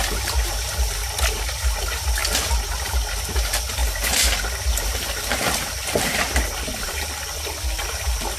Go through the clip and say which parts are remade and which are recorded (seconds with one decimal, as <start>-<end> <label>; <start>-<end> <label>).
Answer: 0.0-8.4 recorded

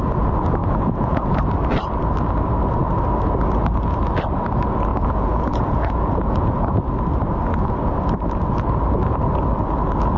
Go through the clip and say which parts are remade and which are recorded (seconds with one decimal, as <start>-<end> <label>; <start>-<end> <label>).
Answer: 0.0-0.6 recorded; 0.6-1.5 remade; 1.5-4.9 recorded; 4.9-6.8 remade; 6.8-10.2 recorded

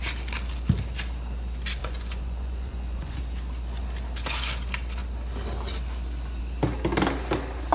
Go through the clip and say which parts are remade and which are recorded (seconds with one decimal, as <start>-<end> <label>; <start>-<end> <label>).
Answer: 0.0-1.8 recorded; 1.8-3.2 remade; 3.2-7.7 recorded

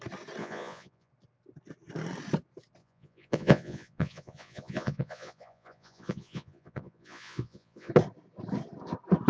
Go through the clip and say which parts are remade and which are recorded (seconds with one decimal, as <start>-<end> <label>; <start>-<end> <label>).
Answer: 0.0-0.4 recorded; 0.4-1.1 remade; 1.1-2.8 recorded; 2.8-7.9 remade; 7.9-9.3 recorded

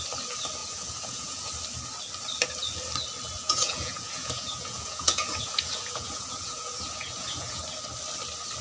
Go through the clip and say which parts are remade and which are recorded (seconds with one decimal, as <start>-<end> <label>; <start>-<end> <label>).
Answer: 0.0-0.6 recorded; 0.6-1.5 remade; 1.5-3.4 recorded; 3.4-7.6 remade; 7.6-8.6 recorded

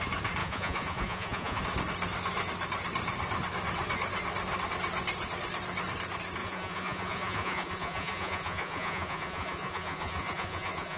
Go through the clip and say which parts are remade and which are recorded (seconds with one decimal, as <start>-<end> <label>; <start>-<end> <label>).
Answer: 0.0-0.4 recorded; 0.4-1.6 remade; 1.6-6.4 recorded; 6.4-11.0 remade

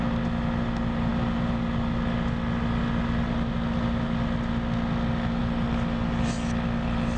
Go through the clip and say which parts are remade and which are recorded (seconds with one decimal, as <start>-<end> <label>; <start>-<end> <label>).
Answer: 0.0-7.2 recorded

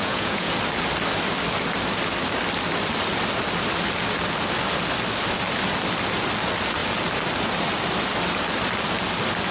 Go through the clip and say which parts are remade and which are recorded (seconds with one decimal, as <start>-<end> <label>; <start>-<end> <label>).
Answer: 0.0-0.5 remade; 0.5-9.5 recorded